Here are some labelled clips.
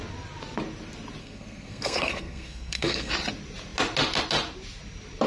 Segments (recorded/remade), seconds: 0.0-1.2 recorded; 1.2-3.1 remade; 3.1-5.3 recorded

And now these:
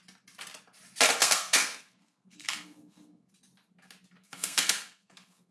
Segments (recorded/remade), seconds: 0.0-1.2 recorded; 1.2-3.3 remade; 3.3-4.2 recorded; 4.2-5.5 remade

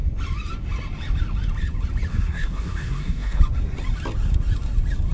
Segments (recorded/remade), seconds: 0.0-2.1 recorded; 2.1-3.4 remade; 3.4-5.1 recorded

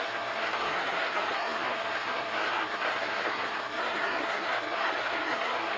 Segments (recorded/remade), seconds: 0.0-5.8 remade